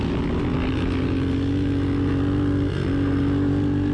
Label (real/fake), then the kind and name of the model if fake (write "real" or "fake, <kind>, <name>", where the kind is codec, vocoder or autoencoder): real